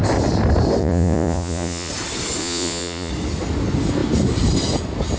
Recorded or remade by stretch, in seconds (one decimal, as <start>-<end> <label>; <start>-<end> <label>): 0.0-0.8 recorded; 0.8-1.9 remade; 1.9-2.4 recorded; 2.4-3.1 remade; 3.1-5.2 recorded